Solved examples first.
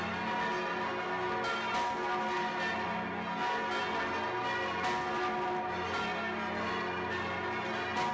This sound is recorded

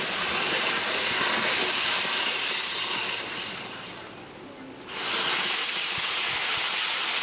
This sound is recorded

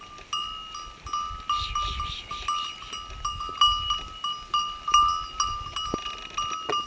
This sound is recorded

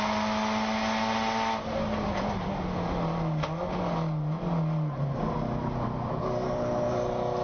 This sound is recorded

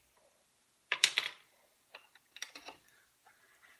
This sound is remade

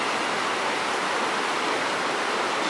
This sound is remade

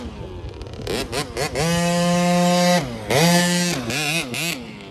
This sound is recorded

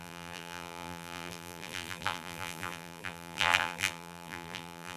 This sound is remade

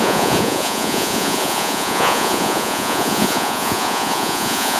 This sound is remade